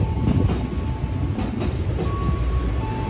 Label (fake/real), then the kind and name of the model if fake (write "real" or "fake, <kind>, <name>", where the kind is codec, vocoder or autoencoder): real